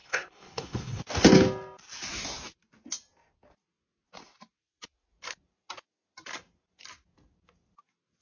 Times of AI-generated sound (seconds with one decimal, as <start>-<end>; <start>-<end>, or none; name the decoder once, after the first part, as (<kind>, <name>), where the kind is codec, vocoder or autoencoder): 0.0-1.0 (codec, HILCodec)